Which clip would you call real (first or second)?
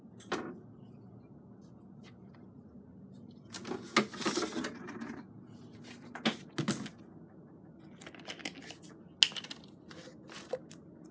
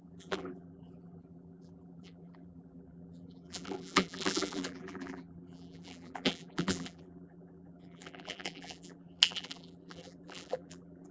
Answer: first